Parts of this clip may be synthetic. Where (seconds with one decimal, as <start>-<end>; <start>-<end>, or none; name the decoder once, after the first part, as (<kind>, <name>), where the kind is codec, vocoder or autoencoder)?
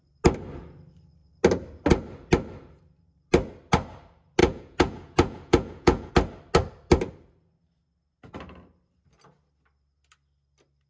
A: 4.4-6.1 (vocoder, Vocos)